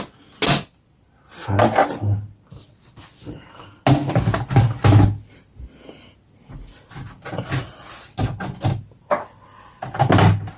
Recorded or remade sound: recorded